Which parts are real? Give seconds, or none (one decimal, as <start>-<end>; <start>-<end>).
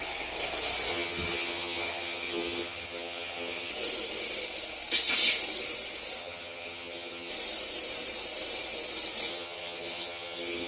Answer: 0.0-0.9; 3.7-6.2; 7.3-9.3